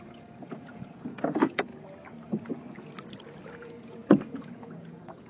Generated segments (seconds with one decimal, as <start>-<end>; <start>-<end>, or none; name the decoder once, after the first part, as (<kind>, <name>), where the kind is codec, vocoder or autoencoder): 0.0-1.7 (vocoder, Vocos); 3.5-5.3